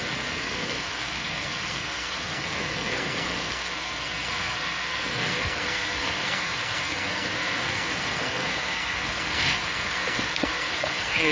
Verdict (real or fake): fake